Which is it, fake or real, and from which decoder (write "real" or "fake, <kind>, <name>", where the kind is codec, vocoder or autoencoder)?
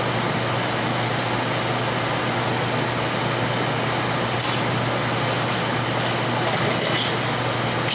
real